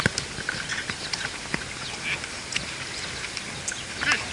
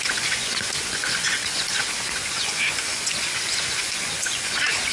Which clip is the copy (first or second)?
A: second